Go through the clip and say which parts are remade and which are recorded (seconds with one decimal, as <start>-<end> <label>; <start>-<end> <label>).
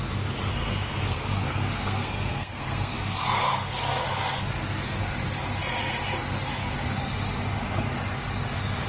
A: 0.0-0.5 recorded; 0.5-5.0 remade; 5.0-8.9 recorded